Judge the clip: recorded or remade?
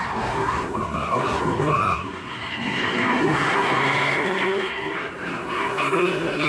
remade